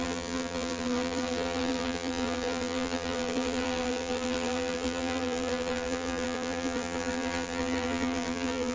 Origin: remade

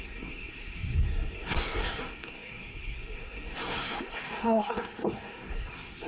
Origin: remade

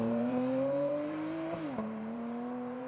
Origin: remade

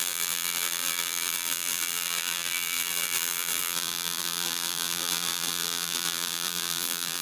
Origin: remade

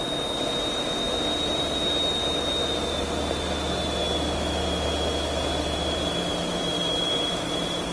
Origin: recorded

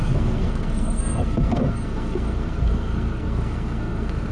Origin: remade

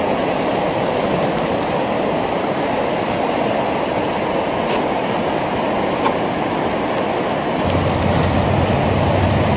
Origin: recorded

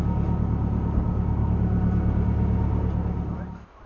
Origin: recorded